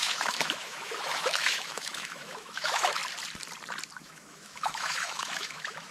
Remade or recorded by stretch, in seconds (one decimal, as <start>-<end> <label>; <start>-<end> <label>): 0.0-3.0 remade; 3.0-4.0 recorded; 4.0-5.9 remade